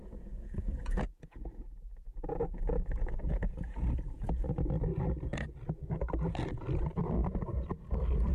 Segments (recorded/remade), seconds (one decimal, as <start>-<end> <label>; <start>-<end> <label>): 0.0-4.5 remade; 4.5-8.3 recorded